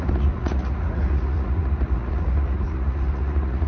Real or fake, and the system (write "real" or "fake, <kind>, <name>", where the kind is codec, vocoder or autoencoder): fake, vocoder, Vocos